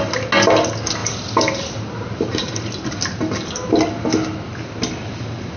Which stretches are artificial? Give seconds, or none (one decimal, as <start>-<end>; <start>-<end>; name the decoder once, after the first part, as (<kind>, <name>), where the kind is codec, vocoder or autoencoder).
1.0-2.9 (vocoder, BigVGAN v2)